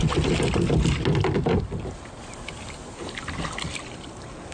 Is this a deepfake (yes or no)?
no